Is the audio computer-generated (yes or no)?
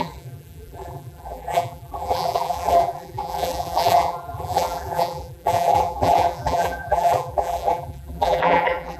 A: yes